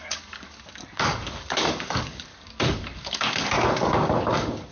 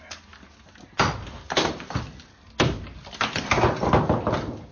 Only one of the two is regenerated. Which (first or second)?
first